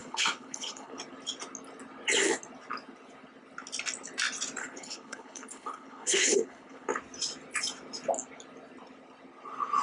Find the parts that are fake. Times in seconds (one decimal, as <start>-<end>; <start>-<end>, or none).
0.0-1.0; 4.6-6.9